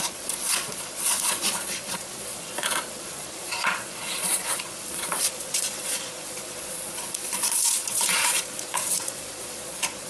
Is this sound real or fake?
fake